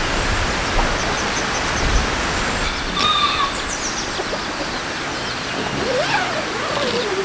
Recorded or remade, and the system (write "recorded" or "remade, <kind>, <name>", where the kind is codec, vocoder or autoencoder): recorded